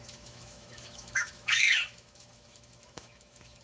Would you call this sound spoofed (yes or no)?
yes